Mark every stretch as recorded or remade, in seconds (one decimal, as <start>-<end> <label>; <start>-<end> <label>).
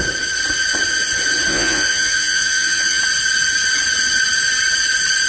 0.0-1.5 recorded; 1.5-3.0 remade; 3.0-5.3 recorded